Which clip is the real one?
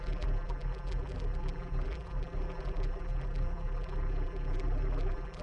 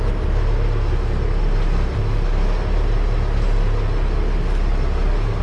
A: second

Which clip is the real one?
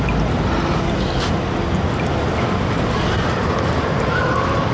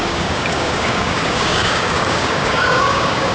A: first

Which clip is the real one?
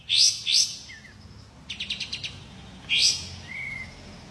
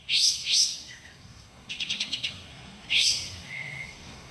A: first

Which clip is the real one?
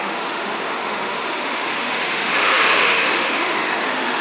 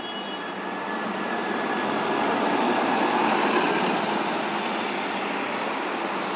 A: second